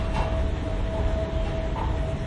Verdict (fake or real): real